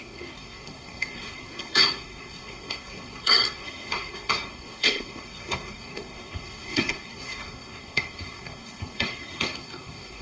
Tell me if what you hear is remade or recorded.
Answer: remade